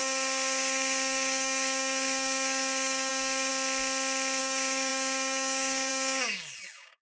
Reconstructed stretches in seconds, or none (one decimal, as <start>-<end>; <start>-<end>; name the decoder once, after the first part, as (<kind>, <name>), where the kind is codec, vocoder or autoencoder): 0.0-3.5 (codec, DAC); 4.4-7.0